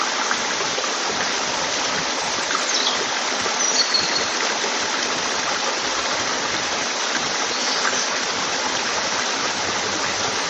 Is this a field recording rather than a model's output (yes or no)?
yes